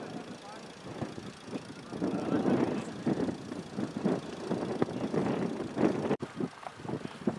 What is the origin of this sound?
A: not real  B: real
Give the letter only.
B